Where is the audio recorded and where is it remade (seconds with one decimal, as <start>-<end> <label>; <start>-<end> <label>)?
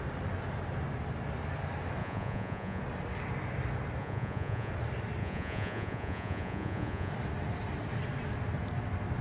0.0-2.0 recorded; 2.0-2.8 remade; 2.8-4.0 recorded; 4.0-4.7 remade; 4.7-5.2 recorded; 5.2-7.1 remade; 7.1-9.2 recorded